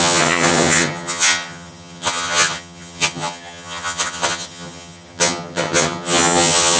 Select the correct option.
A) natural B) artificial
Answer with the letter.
B